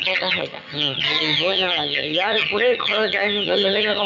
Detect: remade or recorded remade